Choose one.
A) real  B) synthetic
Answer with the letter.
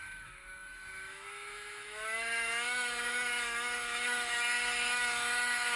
B